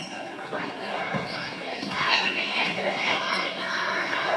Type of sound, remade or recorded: remade